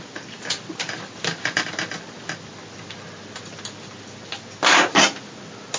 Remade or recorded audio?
recorded